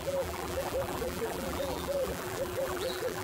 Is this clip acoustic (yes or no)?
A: no